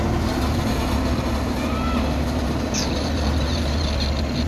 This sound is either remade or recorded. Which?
recorded